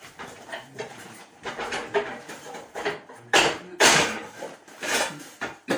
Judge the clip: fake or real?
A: fake